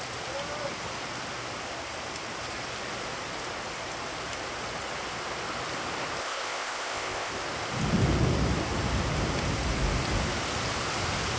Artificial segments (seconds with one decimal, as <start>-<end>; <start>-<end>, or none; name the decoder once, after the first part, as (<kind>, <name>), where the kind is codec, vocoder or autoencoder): 6.2-7.3 (codec, ZipCodec)